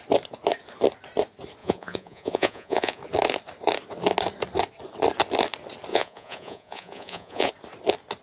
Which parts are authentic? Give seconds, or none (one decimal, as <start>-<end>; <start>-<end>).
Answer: 0.0-1.6; 3.0-5.9; 7.5-8.2